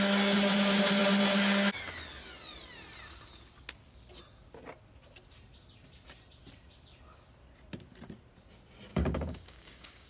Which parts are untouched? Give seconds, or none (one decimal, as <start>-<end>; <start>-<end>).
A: 0.0-8.9